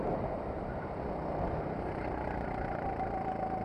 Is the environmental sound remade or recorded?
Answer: recorded